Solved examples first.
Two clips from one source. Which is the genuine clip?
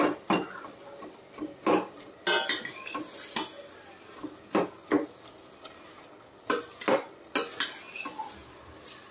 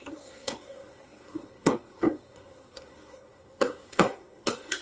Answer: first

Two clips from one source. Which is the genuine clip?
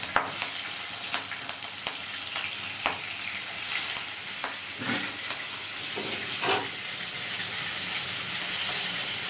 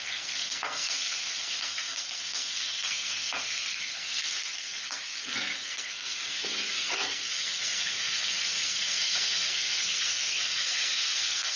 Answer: first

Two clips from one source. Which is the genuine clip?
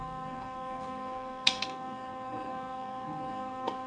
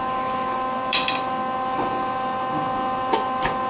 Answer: second